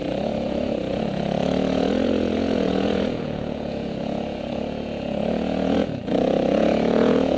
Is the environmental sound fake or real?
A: fake